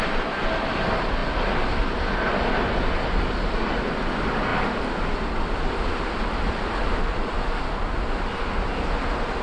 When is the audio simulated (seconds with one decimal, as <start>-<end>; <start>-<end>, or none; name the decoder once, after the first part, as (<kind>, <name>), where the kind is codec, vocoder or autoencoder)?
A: none